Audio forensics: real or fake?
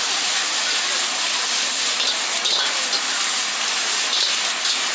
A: real